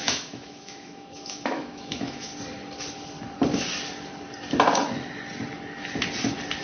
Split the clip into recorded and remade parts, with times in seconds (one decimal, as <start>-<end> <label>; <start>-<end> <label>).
0.0-2.3 remade; 2.3-6.6 recorded

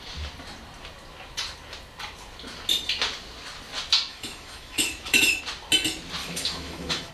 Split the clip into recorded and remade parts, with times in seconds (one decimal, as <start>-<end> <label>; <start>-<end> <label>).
0.0-4.1 recorded; 4.1-5.4 remade; 5.4-6.2 recorded; 6.2-7.1 remade

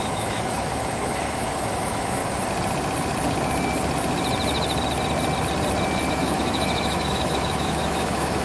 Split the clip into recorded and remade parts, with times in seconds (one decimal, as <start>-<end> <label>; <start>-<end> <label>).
0.0-2.2 remade; 2.2-6.1 recorded; 6.1-8.4 remade

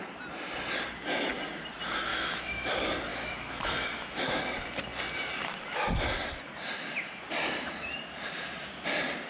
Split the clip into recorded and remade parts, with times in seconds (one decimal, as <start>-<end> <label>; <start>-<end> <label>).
0.0-2.1 recorded; 2.1-2.7 remade; 2.7-3.1 recorded; 3.1-4.4 remade; 4.4-9.3 recorded

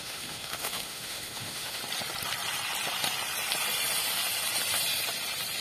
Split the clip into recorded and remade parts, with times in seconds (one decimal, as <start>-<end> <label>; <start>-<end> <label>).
0.0-1.8 remade; 1.8-5.6 recorded